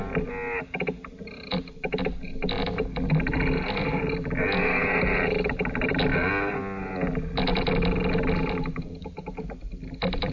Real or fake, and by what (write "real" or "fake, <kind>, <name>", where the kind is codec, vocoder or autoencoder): real